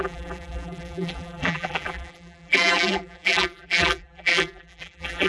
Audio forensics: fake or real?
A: fake